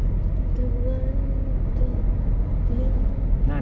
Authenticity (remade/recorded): recorded